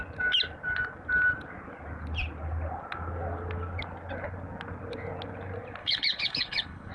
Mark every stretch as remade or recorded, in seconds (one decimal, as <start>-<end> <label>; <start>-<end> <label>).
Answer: 0.0-5.8 recorded; 5.8-6.9 remade